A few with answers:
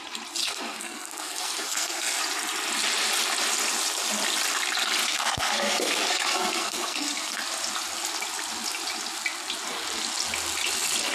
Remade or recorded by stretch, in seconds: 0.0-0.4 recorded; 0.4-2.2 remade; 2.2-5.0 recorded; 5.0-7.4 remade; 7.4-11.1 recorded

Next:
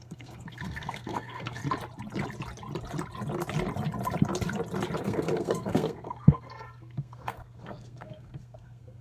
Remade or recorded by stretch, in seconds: 0.0-1.6 remade; 1.6-5.0 recorded; 5.0-9.0 remade